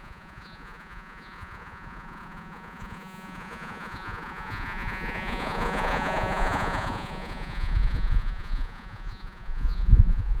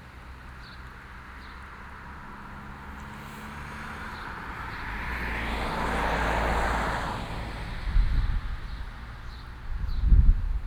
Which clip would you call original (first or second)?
second